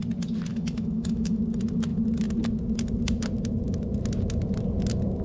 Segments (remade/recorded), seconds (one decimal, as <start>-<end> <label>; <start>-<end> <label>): 0.0-0.5 recorded; 0.5-1.4 remade; 1.4-5.2 recorded